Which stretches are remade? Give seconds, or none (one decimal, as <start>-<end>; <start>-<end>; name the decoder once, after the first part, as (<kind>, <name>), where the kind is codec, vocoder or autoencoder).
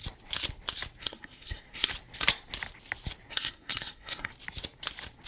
1.0-1.9 (codec, SNAC); 3.3-4.3